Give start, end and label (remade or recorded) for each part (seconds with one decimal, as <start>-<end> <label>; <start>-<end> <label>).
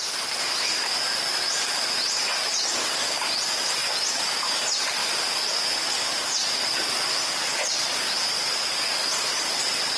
0.0-10.0 recorded